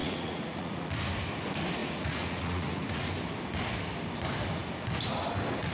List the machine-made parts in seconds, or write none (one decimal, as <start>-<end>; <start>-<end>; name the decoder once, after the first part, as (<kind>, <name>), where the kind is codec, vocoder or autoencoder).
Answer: 0.0-0.9 (vocoder, Vocos); 1.8-3.1